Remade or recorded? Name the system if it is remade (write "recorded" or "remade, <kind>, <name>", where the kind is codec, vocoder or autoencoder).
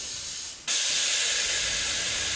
recorded